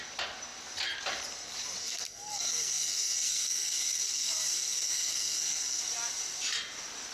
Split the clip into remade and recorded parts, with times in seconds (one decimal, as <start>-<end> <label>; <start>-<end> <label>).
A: 0.0-1.8 recorded; 1.8-5.8 remade; 5.8-7.1 recorded